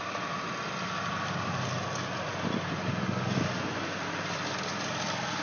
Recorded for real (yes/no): yes